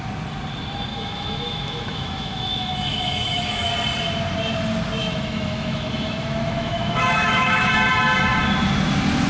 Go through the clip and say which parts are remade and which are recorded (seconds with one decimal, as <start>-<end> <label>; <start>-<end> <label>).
0.0-0.9 recorded; 0.9-3.7 remade; 3.7-5.0 recorded; 5.0-7.7 remade; 7.7-9.3 recorded